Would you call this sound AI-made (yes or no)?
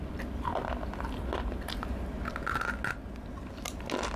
no